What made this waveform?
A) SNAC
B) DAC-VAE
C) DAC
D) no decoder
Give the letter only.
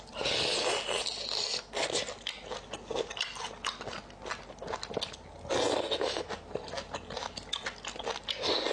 D